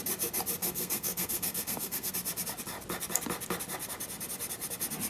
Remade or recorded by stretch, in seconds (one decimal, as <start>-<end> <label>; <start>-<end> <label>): 0.0-0.6 recorded; 0.6-2.1 remade; 2.1-5.1 recorded